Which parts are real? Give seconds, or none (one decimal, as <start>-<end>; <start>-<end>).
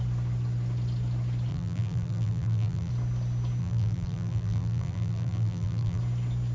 0.0-1.5; 2.9-3.6; 6.0-6.5